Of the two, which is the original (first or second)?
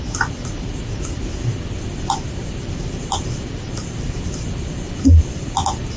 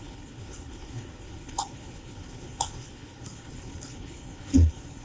first